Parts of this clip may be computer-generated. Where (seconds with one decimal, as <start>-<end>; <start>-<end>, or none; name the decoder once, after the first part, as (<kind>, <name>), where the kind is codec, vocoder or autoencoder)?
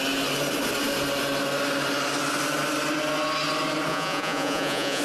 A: 3.9-5.0 (vocoder, Vocos)